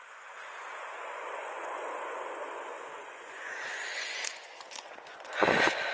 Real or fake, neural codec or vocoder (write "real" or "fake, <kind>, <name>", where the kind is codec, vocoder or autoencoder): fake, vocoder, Vocos